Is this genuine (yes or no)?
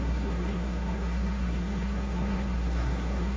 no